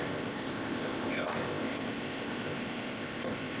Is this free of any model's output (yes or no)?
no